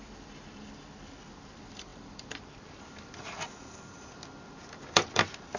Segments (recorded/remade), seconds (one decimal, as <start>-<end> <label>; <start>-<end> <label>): 0.0-5.6 remade